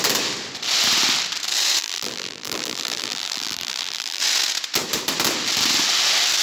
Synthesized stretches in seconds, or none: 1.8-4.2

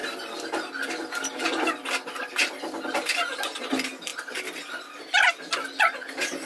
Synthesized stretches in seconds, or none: none

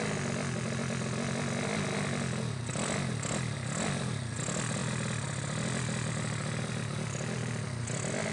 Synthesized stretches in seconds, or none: none